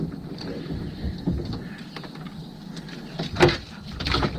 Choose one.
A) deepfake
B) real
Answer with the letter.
B